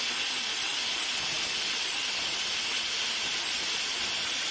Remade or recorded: recorded